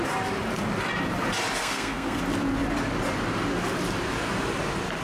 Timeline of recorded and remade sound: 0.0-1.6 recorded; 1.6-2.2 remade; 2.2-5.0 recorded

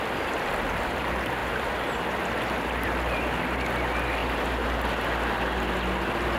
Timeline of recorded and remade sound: 0.0-1.4 recorded; 1.4-2.0 remade; 2.0-4.2 recorded; 4.2-4.8 remade; 4.8-6.4 recorded

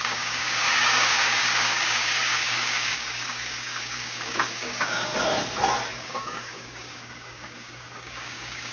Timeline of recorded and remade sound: 0.0-5.1 remade; 5.1-5.9 recorded; 5.9-8.7 remade

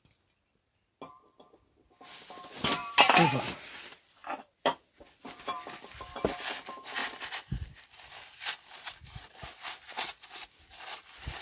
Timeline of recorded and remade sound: 0.0-4.2 recorded; 4.2-4.8 remade; 4.8-7.0 recorded; 7.0-8.5 remade; 8.5-11.4 recorded